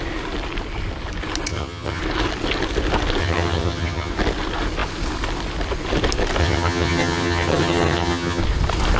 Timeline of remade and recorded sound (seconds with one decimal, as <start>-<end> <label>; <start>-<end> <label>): 0.0-1.5 recorded; 1.5-2.0 remade; 2.0-3.2 recorded; 3.2-4.1 remade; 4.1-6.4 recorded; 6.4-8.4 remade; 8.4-9.0 recorded